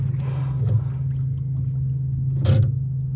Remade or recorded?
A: recorded